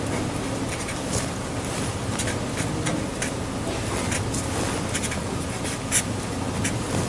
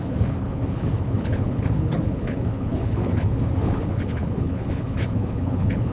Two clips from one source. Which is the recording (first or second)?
first